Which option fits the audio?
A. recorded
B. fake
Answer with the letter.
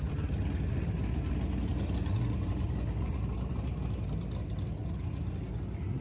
A